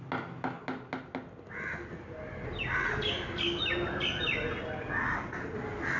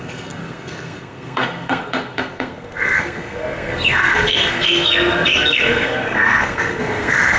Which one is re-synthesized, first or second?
second